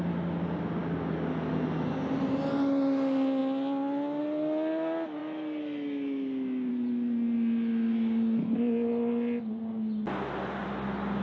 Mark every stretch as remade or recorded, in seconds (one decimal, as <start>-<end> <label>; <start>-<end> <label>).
0.0-11.2 recorded